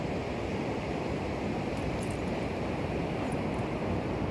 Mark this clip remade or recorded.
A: recorded